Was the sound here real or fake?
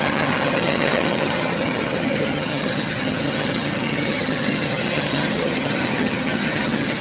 fake